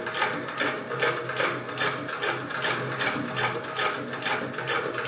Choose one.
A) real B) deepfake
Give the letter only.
A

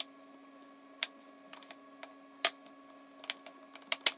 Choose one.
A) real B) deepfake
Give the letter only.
A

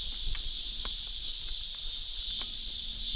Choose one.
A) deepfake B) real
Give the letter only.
A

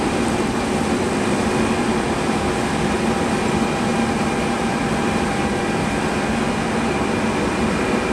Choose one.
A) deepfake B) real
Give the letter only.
A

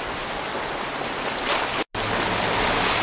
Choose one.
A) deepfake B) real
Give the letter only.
B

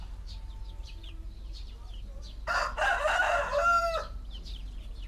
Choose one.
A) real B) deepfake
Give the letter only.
B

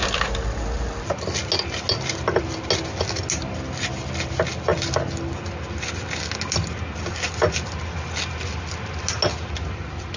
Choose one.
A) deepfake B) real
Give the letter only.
B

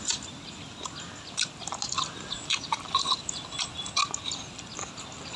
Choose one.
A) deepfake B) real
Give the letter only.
B